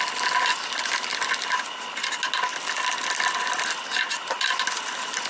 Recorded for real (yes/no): yes